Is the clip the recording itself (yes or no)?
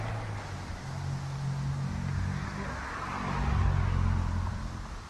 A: yes